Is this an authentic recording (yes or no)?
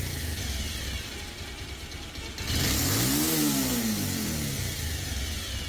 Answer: yes